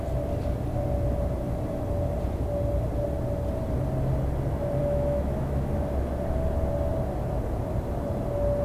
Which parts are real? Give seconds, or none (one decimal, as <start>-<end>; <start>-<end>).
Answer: 0.0-4.8; 5.7-8.6